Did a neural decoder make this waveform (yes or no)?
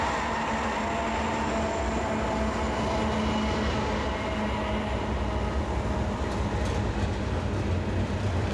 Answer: no